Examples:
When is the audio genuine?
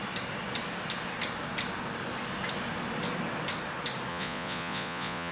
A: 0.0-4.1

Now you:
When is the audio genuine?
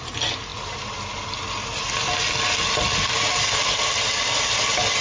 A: 0.0-5.0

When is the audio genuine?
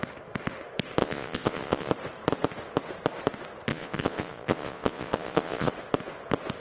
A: 0.0-1.0; 1.9-3.7; 5.7-6.6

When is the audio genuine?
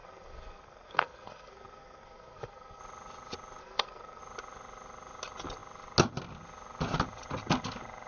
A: 2.8-3.6; 4.2-8.1